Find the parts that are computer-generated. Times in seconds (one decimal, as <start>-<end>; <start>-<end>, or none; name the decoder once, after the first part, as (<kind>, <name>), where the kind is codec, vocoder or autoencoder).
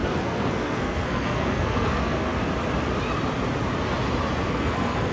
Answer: 0.0-2.4 (codec, SNAC); 4.5-5.1